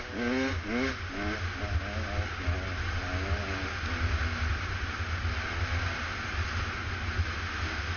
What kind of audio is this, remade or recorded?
recorded